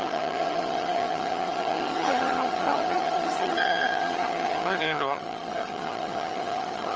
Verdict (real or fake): fake